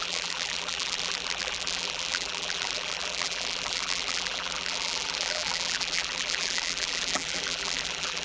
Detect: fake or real fake